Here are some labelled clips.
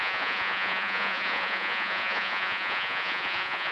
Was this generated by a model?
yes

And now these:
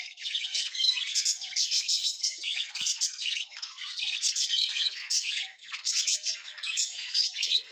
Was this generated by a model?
yes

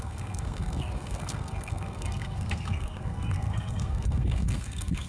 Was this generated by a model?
yes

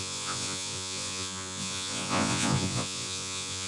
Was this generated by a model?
yes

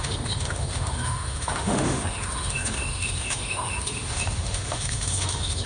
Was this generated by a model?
yes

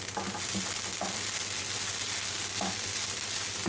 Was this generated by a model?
no